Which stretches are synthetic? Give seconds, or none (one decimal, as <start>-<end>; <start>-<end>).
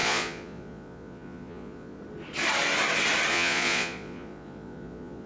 0.0-2.0; 3.3-5.3